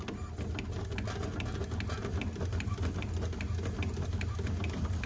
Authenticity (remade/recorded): recorded